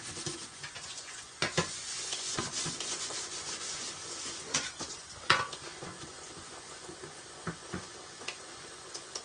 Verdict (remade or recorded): remade